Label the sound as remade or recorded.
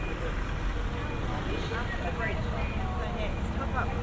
recorded